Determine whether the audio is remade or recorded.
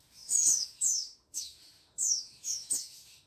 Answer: remade